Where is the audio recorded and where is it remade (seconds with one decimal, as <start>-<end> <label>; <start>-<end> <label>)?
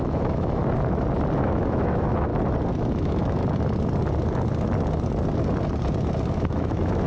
0.0-0.6 remade; 0.6-1.4 recorded; 1.4-2.3 remade; 2.3-2.8 recorded; 2.8-3.4 remade; 3.4-6.3 recorded; 6.3-7.1 remade